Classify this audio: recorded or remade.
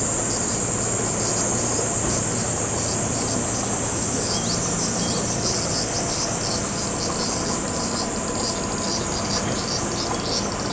recorded